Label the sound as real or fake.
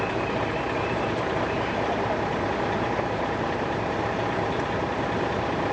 fake